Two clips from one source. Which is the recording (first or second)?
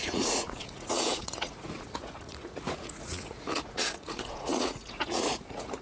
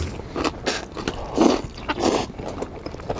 second